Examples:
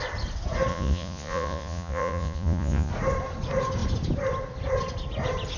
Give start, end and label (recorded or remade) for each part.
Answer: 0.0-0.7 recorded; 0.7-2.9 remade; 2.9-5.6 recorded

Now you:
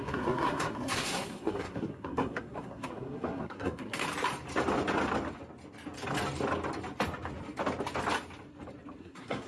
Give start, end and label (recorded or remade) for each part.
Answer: 0.0-4.0 remade; 4.0-9.0 recorded; 9.0-9.5 remade

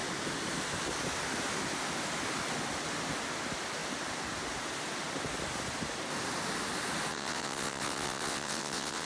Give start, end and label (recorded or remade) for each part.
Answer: 0.0-7.1 recorded; 7.1-9.1 remade

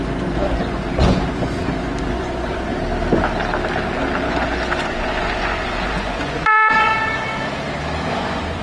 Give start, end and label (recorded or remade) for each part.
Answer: 0.0-2.7 remade; 2.7-4.3 recorded; 4.3-6.9 remade; 6.9-8.1 recorded; 8.1-8.6 remade